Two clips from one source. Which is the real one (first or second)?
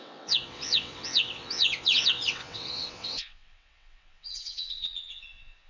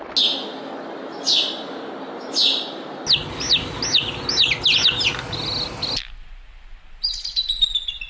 second